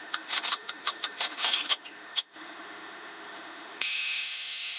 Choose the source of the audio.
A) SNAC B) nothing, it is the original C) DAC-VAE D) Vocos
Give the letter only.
C